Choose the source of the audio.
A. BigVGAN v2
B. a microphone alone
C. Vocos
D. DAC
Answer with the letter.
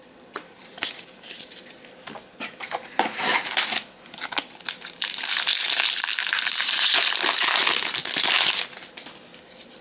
B